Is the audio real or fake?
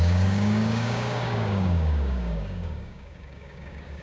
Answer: fake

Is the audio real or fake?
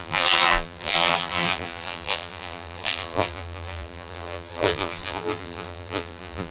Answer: fake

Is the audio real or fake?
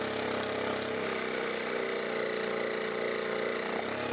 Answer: real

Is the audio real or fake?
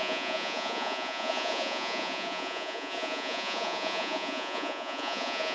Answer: fake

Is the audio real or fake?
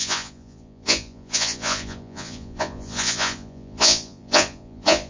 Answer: fake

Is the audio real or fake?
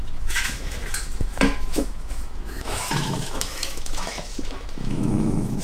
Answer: fake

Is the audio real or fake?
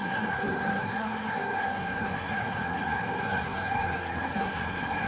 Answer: fake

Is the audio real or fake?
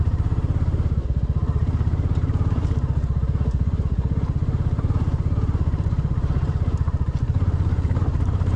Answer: fake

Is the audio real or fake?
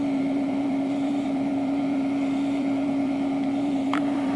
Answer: fake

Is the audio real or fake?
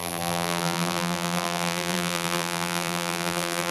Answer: fake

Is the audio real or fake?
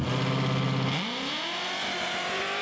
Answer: real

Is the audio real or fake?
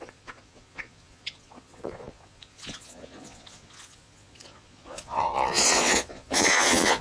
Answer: fake